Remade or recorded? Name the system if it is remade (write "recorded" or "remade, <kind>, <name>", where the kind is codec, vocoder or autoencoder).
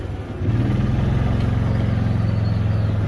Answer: recorded